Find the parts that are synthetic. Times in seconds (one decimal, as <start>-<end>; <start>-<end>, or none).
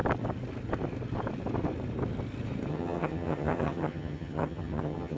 2.7-5.2